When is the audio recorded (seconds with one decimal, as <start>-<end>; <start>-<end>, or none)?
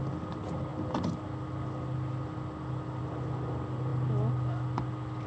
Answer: 0.0-5.3